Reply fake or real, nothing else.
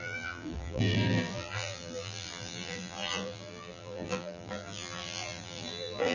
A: fake